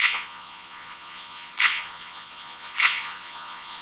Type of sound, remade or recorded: remade